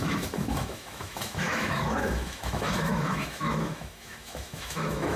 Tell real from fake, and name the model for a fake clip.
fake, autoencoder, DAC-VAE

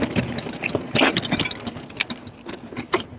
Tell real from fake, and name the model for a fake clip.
real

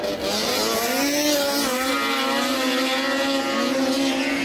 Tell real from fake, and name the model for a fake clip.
real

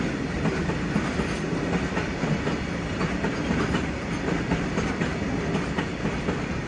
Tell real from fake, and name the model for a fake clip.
real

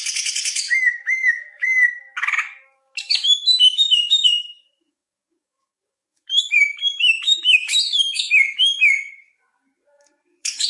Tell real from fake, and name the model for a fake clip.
fake, codec, DAC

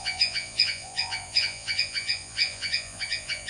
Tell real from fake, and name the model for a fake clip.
fake, vocoder, Vocos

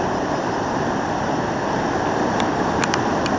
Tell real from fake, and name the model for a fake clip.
real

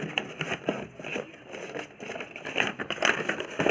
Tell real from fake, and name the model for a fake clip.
real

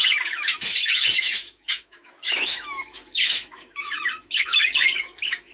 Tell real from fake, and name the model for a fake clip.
fake, autoencoder, DAC-VAE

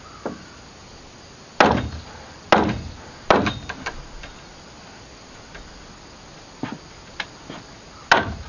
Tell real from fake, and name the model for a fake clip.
real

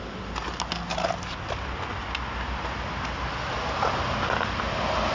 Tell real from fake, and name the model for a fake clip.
real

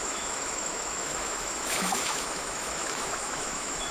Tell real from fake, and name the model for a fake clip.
fake, autoencoder, DAC-VAE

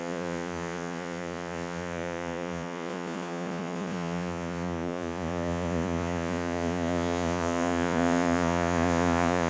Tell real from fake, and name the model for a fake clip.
fake, vocoder, Vocos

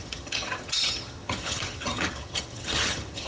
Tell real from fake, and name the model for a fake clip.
fake, vocoder, HiFi-GAN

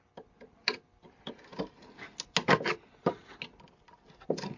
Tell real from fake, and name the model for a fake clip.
real